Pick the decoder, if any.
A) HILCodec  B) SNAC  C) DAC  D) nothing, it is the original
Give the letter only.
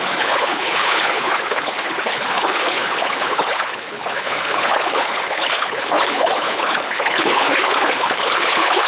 A